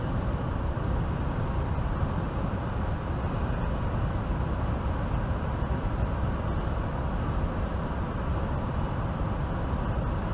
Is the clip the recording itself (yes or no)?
yes